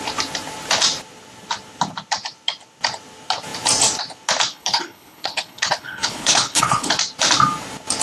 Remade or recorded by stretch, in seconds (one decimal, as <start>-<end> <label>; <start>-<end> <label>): 0.0-4.5 recorded; 4.5-6.9 remade; 6.9-8.0 recorded